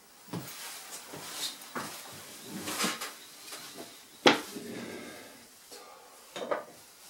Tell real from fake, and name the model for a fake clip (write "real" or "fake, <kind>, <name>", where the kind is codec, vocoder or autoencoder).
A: real